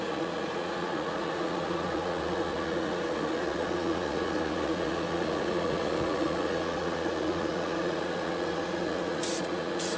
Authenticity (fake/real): fake